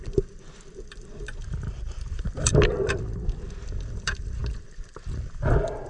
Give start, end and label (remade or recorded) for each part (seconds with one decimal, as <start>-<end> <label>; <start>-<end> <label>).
0.0-4.4 remade; 4.4-5.1 recorded; 5.1-5.9 remade